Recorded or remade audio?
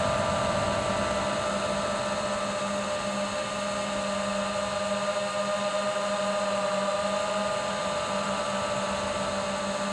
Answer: recorded